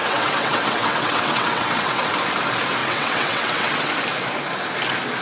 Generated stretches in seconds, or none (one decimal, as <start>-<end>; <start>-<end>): 0.0-2.1; 2.8-3.9